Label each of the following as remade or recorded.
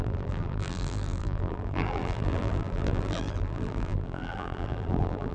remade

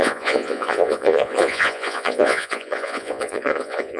remade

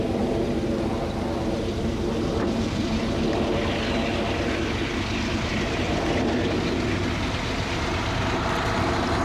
recorded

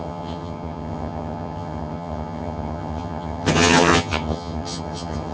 remade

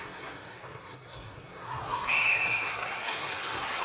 remade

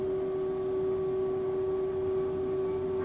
recorded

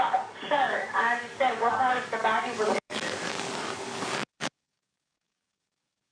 remade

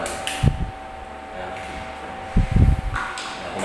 recorded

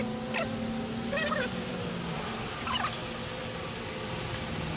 recorded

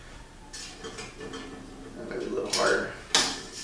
recorded